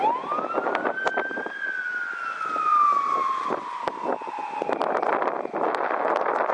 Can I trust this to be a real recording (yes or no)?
yes